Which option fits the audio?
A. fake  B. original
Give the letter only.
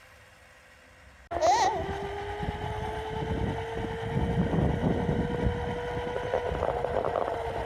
B